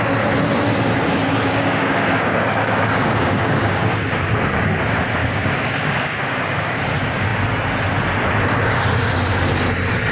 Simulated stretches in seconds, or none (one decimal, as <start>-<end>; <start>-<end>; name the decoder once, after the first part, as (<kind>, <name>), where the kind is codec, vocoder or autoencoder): 1.2-3.8 (codec, DAC); 5.2-6.8

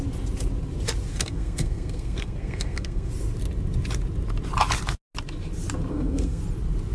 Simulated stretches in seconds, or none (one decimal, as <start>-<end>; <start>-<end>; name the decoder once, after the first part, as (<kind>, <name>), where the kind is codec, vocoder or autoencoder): 1.1-3.1 (codec, SNAC); 5.9-6.4

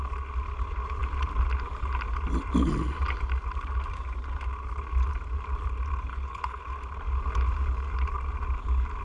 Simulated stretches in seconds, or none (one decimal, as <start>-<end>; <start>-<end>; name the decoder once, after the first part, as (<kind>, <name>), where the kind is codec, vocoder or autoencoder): 6.1-6.6 (codec, HILCodec)

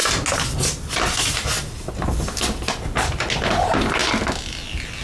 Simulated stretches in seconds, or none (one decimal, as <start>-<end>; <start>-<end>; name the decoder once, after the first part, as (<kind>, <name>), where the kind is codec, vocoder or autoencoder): none

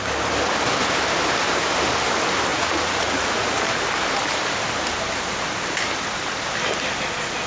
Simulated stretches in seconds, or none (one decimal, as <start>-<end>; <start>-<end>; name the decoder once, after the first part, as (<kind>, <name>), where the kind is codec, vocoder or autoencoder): 2.5-3.6 (vocoder, Vocos)

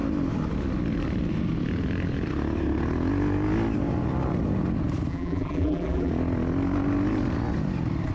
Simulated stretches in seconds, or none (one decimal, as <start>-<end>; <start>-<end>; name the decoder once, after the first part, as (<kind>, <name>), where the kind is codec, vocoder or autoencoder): 5.1-6.1 (vocoder, BigVGAN v2)